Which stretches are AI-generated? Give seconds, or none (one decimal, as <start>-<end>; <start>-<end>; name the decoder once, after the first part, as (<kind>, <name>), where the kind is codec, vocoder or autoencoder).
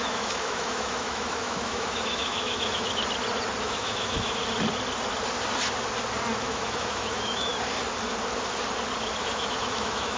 0.0-3.0 (autoencoder, DAC-VAE); 3.6-4.4; 6.4-7.5; 9.2-10.2